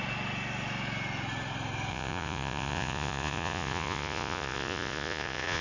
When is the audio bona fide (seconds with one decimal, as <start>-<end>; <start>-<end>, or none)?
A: 0.0-1.9

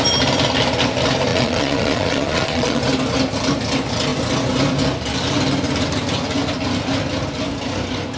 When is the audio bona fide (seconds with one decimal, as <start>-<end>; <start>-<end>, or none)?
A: 0.0-1.3; 2.8-8.2

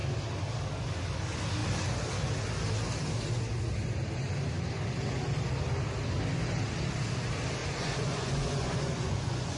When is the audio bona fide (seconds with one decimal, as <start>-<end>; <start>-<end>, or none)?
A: 0.0-7.6

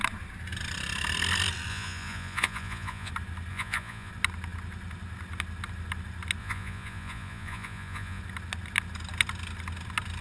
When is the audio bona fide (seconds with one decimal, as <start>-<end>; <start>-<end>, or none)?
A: 0.0-1.7; 3.1-3.5; 4.1-6.4; 8.2-10.2